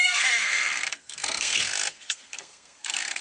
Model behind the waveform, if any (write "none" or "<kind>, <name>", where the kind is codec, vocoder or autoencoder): codec, SNAC